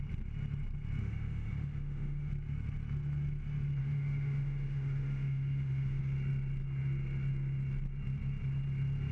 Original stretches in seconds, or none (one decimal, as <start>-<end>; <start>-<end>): 0.0-1.0; 2.3-3.8; 6.0-9.1